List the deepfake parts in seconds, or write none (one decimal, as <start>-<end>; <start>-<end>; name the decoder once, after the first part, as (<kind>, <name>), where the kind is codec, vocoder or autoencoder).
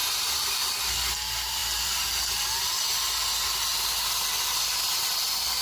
0.0-0.6 (vocoder, BigVGAN v2)